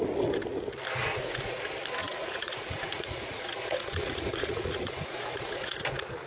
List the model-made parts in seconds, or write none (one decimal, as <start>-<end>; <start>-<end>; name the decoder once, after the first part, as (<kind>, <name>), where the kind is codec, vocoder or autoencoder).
1.1-1.6 (vocoder, Vocos); 2.0-5.8